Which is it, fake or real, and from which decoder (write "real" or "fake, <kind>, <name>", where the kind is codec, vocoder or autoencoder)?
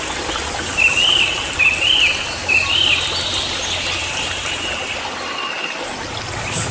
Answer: real